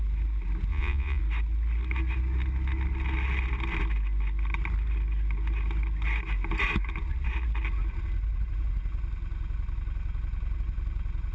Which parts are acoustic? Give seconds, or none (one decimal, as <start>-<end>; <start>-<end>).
0.0-0.7; 1.2-11.3